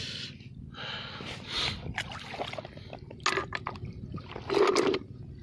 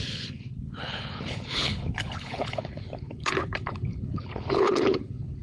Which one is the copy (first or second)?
second